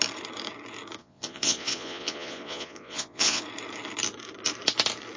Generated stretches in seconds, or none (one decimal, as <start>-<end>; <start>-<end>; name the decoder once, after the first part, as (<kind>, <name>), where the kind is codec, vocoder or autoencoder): 1.0-3.4 (vocoder, Vocos)